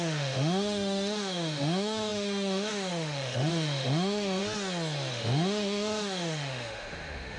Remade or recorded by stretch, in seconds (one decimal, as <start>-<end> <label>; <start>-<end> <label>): 0.0-4.4 remade; 4.4-5.1 recorded; 5.1-7.4 remade